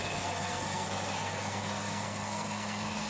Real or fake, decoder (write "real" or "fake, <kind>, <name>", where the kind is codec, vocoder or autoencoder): fake, codec, SNAC